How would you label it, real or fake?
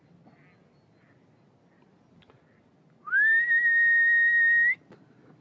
real